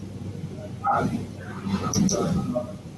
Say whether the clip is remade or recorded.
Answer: remade